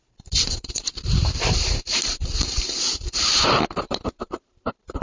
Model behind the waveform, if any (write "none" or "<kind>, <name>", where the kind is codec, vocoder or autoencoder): vocoder, BigVGAN v2